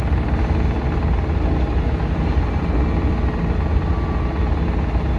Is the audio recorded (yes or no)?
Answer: yes